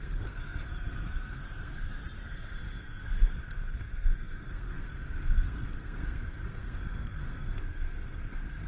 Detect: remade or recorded remade